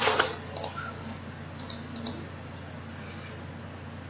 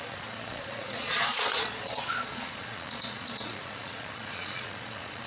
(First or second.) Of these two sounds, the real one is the first